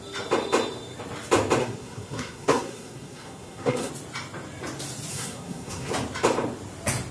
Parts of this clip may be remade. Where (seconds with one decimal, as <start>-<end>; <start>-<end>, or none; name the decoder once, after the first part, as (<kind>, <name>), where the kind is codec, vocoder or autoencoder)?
1.6-3.9 (codec, SNAC); 5.1-5.9